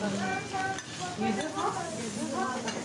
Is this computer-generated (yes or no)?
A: no